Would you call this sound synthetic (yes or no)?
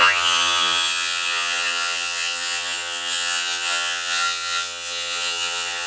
yes